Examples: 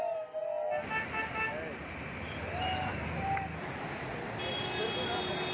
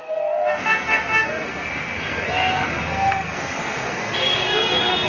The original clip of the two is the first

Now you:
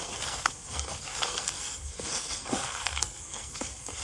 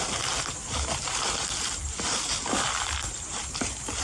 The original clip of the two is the second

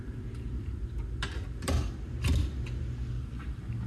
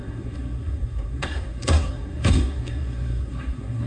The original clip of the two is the first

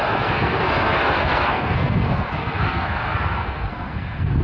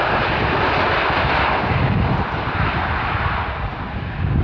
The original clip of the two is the second